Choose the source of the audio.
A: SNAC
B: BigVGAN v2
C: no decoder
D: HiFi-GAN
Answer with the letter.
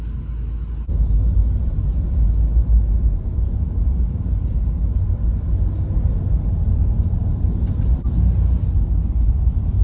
C